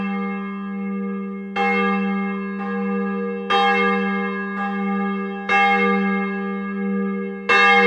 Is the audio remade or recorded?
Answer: recorded